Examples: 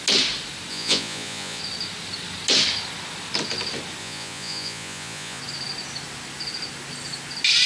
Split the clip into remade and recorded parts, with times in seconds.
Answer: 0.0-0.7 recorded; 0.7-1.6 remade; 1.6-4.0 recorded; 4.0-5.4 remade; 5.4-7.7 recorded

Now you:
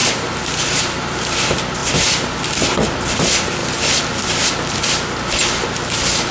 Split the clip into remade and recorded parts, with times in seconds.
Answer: 0.0-3.6 recorded; 3.6-4.5 remade; 4.5-6.3 recorded

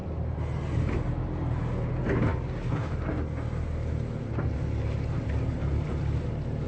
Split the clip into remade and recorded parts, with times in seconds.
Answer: 0.0-6.7 recorded

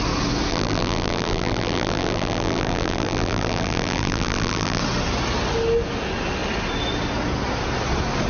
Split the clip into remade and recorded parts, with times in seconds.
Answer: 0.0-0.5 recorded; 0.5-4.8 remade; 4.8-8.3 recorded

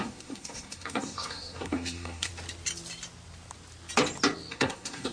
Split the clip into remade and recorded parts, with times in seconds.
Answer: 0.0-2.3 remade; 2.3-4.5 recorded; 4.5-5.1 remade

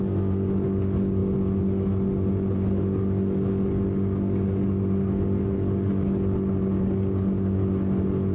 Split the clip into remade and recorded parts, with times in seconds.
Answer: 0.0-8.3 recorded

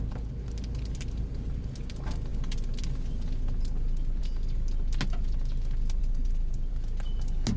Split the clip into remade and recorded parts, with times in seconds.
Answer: 0.0-6.0 recorded; 6.0-6.7 remade; 6.7-7.6 recorded